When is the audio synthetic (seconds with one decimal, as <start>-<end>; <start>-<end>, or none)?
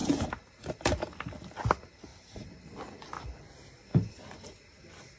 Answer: none